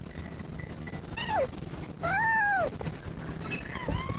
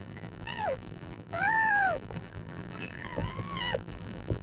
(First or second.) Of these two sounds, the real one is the first